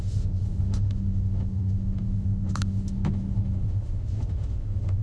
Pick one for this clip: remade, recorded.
remade